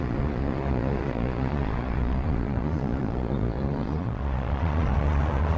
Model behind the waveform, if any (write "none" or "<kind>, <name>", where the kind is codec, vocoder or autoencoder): vocoder, Vocos